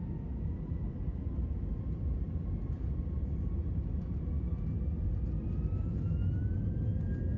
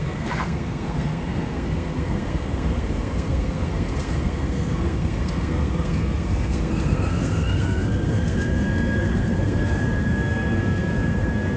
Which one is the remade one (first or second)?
second